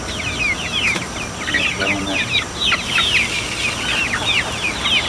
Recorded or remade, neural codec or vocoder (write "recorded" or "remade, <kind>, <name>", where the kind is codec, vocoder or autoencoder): recorded